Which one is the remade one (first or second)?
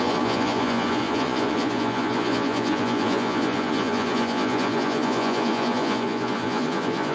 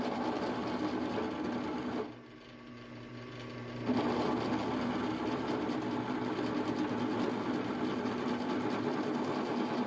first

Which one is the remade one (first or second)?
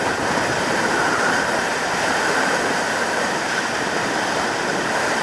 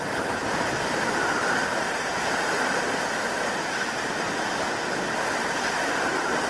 first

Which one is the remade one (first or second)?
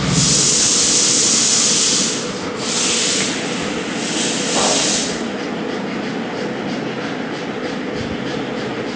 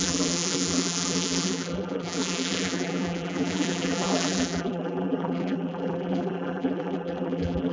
second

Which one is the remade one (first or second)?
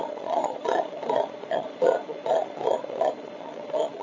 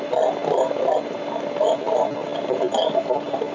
first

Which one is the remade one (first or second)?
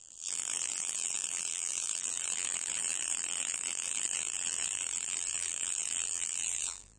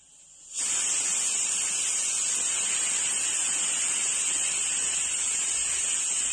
first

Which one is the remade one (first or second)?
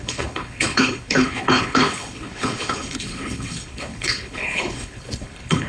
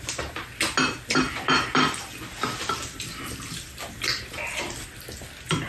first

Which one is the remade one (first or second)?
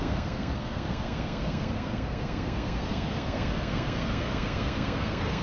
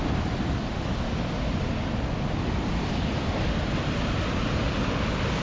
first